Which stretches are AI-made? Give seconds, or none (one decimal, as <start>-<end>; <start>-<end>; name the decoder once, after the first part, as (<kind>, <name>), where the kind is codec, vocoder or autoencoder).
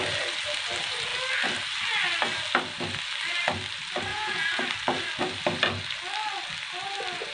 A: 4.1-4.6 (vocoder, Vocos)